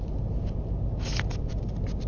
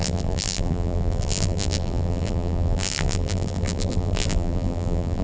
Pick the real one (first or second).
first